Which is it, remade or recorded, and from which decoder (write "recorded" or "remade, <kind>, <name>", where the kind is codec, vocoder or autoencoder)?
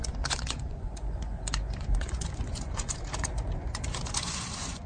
remade, vocoder, Vocos